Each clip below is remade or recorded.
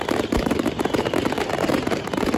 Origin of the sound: remade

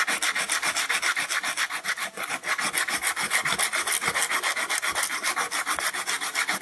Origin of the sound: recorded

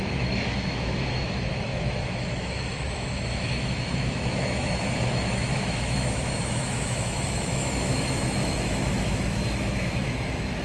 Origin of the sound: remade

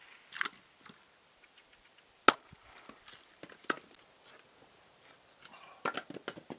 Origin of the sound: recorded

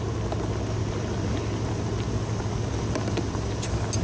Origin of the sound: recorded